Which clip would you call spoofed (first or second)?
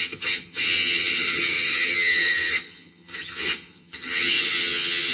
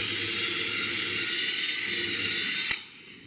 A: first